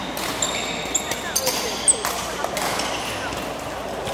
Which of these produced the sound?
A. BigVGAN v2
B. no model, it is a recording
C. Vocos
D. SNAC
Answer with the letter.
B